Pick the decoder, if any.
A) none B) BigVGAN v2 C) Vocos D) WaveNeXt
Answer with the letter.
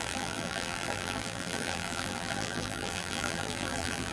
B